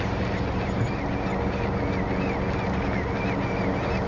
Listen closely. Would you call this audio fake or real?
real